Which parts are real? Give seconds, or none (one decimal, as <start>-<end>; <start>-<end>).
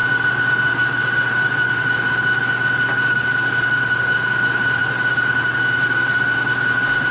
0.0-7.1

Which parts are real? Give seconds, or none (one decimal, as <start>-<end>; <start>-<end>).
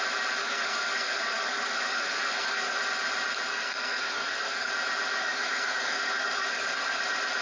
0.0-0.4; 2.8-3.5; 4.7-5.2; 7.0-7.4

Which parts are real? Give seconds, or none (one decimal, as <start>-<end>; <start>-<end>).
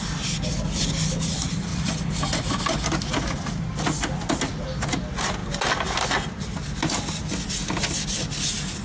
0.0-1.7; 2.5-8.8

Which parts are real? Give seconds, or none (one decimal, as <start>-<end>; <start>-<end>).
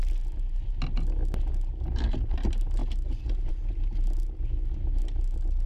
0.0-5.7